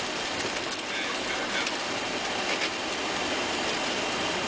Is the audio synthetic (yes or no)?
no